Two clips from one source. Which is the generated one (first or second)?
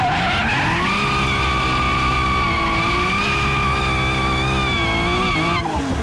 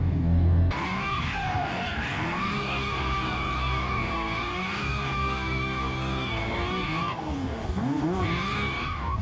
second